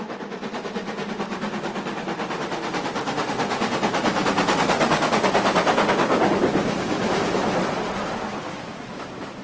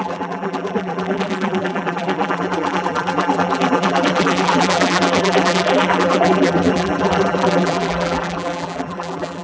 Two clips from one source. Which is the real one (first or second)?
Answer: first